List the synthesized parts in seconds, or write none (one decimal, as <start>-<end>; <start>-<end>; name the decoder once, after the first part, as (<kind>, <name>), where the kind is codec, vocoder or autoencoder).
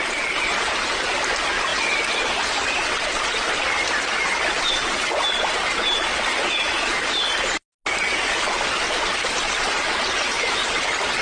none